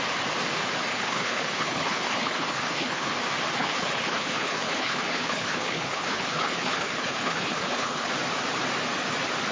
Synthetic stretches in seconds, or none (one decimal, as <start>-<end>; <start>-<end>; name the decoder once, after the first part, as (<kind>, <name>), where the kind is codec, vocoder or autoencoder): 0.9-3.1 (codec, HILCodec); 3.6-8.1